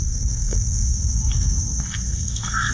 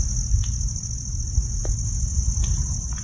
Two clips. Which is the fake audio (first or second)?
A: first